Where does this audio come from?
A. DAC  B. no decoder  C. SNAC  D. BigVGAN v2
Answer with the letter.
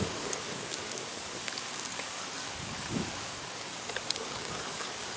A